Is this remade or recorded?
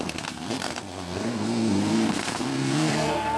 remade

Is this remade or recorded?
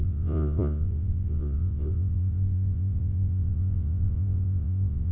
remade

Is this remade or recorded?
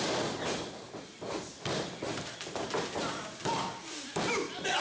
recorded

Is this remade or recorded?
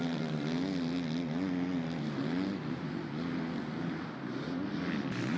recorded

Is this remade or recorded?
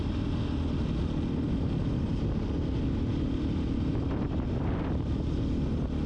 recorded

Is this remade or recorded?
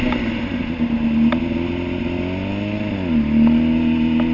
recorded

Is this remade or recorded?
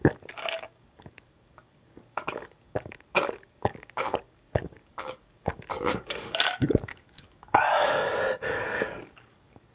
remade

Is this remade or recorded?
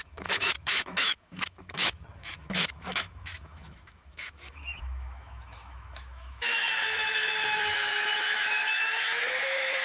remade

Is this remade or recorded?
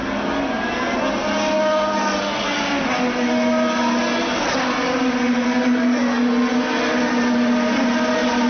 recorded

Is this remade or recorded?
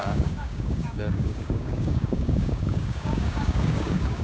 remade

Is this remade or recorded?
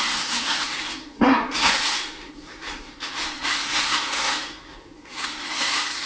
remade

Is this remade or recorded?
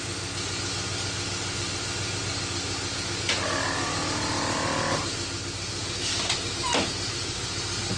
recorded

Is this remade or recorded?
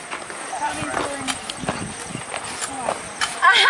recorded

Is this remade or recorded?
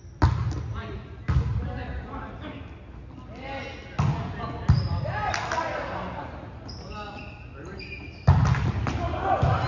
recorded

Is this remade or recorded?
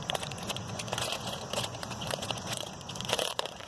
remade